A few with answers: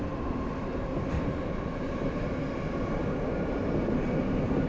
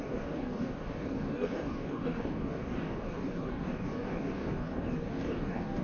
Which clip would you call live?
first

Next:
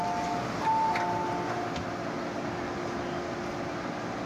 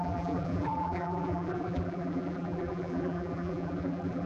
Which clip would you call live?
first